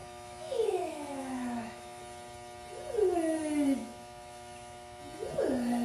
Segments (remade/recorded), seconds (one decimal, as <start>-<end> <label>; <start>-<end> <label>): 0.0-2.0 remade; 2.0-3.8 recorded; 3.8-5.0 remade; 5.0-5.8 recorded